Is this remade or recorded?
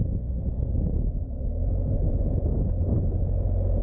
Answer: recorded